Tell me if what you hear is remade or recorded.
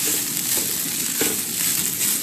recorded